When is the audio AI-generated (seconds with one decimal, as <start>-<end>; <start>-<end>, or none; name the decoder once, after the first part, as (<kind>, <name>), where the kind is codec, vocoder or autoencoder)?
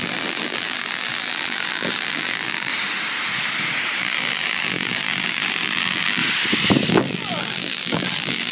0.0-2.7 (vocoder, BigVGAN v2); 4.0-6.2; 6.9-8.5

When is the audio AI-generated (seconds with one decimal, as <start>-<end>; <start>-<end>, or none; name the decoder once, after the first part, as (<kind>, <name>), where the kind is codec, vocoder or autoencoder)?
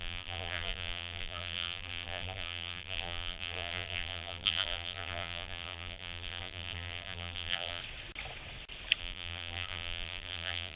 0.0-7.8 (vocoder, BigVGAN v2); 9.0-10.8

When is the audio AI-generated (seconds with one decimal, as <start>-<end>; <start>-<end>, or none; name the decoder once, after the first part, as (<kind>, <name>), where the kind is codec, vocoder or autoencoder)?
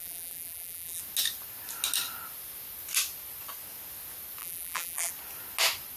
0.0-1.0 (vocoder, BigVGAN v2); 4.4-5.1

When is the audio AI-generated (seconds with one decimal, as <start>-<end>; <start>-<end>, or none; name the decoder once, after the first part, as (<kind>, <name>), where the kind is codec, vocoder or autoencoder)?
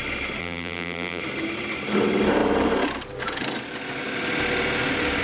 0.4-1.2 (vocoder, BigVGAN v2)